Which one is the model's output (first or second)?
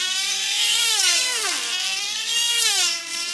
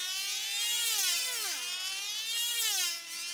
first